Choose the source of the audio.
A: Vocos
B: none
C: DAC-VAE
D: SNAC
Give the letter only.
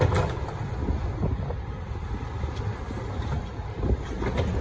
B